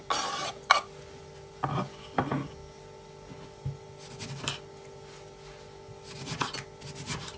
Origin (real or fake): real